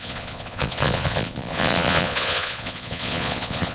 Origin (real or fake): fake